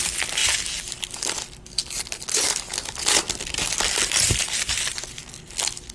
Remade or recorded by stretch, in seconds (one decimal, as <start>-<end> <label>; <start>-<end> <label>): 0.0-5.9 recorded